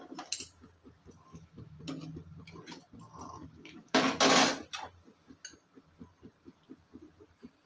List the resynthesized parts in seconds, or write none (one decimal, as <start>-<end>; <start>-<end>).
1.3-1.8; 3.4-4.0